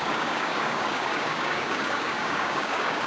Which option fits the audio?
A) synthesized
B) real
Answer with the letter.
A